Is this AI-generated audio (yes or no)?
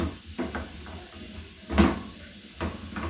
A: no